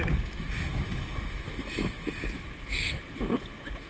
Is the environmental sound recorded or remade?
remade